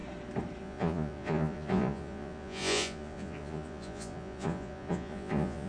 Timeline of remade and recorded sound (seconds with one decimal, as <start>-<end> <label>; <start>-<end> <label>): 0.0-0.6 recorded; 0.6-5.7 remade